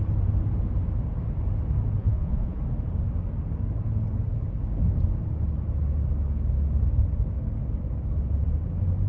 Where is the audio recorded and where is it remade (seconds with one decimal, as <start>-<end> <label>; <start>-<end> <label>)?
0.0-2.0 recorded; 2.0-2.6 remade; 2.6-9.1 recorded